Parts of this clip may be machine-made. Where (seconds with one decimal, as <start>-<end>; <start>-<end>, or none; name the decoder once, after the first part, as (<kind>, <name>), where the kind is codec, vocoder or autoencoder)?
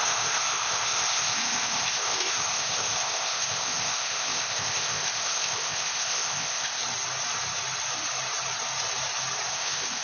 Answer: 0.0-6.8 (codec, ZipCodec); 9.5-10.0